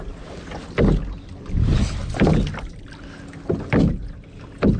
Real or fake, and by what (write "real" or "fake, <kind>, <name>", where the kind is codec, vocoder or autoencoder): real